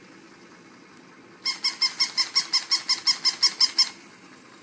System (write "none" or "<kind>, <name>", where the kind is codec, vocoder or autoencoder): none